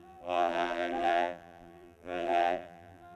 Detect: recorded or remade remade